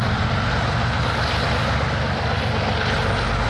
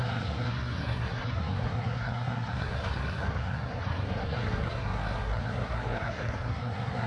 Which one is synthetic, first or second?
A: second